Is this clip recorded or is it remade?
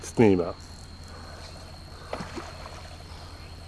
recorded